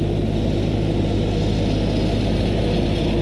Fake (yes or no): no